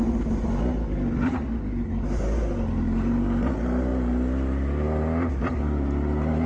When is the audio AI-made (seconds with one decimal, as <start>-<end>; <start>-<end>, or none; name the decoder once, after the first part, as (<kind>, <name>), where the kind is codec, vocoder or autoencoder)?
none